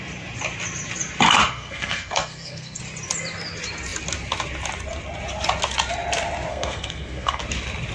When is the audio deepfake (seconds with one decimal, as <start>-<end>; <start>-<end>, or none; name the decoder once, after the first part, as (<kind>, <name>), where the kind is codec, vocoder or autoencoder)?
1.5-2.8 (codec, SNAC); 6.5-7.4